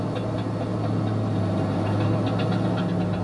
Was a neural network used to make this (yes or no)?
no